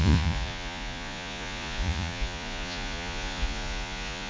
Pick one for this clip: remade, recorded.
remade